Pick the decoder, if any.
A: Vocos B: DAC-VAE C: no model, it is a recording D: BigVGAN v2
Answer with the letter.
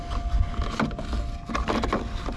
C